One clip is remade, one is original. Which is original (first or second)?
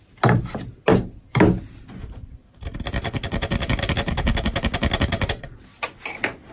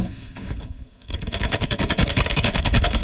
first